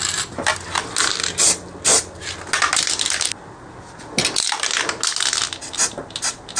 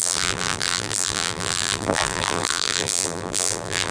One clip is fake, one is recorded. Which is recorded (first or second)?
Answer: first